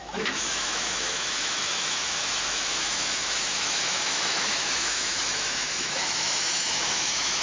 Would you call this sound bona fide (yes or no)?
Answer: no